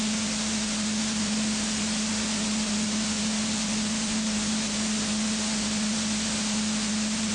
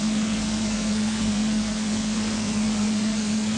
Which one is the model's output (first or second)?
second